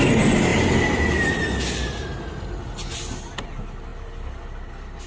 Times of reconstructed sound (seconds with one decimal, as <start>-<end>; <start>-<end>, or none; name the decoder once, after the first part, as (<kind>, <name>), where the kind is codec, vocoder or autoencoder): none